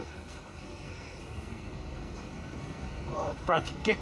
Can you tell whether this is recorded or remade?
remade